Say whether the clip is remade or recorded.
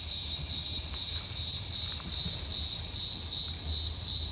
recorded